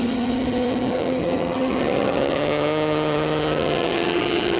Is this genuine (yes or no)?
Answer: no